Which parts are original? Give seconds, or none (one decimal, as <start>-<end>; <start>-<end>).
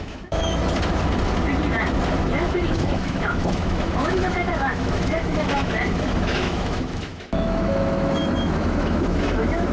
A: 0.6-2.3